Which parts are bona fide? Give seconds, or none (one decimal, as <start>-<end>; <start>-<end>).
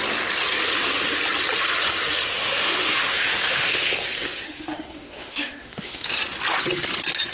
0.0-2.3; 6.1-7.3